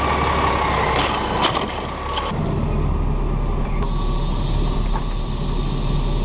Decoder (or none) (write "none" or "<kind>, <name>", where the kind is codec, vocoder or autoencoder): none